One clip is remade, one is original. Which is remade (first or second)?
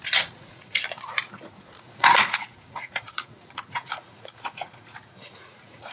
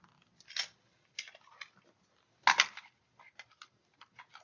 first